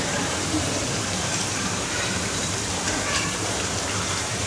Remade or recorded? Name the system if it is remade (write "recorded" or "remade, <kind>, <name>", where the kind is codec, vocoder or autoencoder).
remade, vocoder, BigVGAN v2